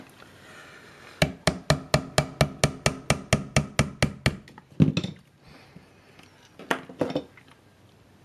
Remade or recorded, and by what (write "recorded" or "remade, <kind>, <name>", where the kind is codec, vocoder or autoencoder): recorded